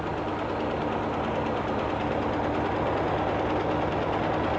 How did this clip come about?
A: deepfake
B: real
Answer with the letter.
B